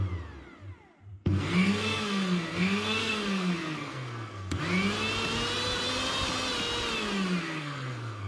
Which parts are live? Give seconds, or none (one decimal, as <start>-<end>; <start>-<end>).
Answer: 0.0-1.1; 4.6-7.4